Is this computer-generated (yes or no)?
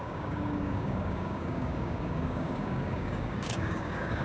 yes